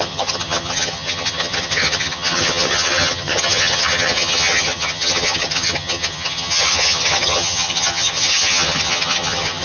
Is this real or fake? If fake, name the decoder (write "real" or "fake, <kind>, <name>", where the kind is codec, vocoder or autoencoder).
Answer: fake, vocoder, HiFi-GAN